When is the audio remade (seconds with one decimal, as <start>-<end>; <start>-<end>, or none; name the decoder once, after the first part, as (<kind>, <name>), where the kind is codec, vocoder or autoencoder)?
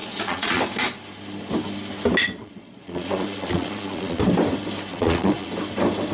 0.0-0.6 (vocoder, Vocos); 2.4-4.2; 4.9-5.5